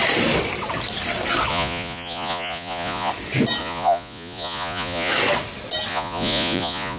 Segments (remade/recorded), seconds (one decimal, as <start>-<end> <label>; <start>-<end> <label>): 0.0-1.5 recorded; 1.5-3.1 remade; 3.1-3.6 recorded; 3.6-5.1 remade; 5.1-5.9 recorded; 5.9-7.0 remade